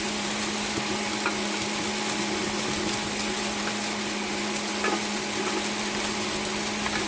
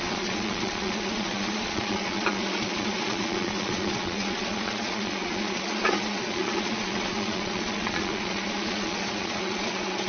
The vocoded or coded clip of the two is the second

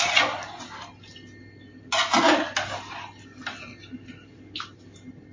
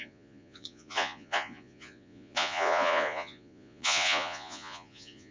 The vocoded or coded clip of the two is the second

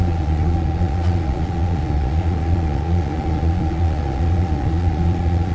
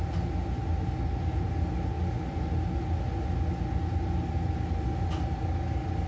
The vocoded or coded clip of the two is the first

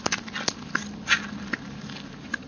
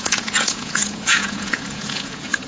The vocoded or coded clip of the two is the second